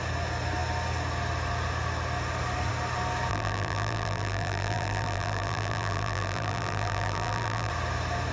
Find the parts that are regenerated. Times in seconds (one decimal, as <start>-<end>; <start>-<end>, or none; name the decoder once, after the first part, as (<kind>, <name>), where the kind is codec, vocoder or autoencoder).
3.3-7.7 (vocoder, BigVGAN v2)